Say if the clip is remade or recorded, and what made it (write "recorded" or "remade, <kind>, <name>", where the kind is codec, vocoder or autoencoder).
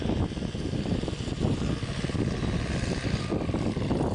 recorded